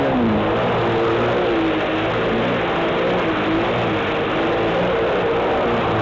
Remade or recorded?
recorded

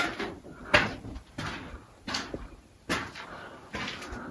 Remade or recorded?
recorded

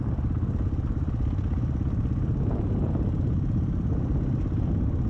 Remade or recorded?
recorded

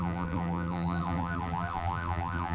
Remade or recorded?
remade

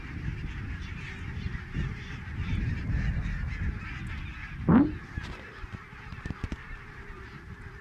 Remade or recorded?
recorded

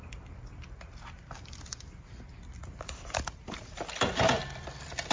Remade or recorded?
remade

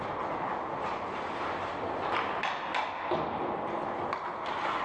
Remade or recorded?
recorded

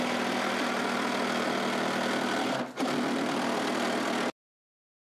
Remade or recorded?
recorded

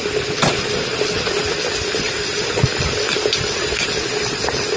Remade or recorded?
recorded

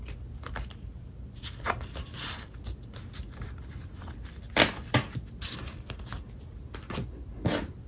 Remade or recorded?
recorded